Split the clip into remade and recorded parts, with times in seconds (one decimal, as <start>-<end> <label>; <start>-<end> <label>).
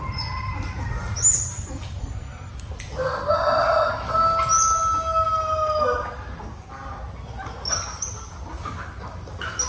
0.0-2.0 recorded; 2.0-2.5 remade; 2.5-9.7 recorded